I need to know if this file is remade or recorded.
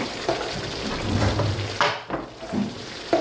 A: recorded